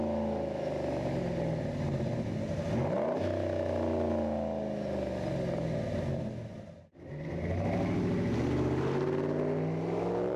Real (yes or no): yes